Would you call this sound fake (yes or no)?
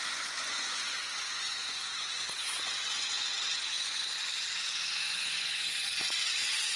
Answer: yes